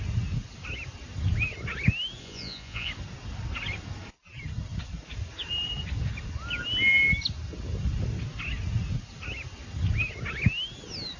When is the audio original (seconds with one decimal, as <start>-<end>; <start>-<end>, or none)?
0.0-2.2; 2.9-11.2